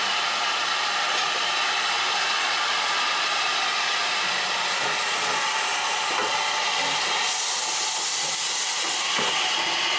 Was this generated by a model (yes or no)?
no